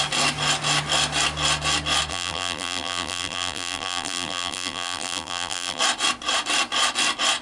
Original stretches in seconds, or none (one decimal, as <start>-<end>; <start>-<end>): 0.0-2.1; 5.8-7.4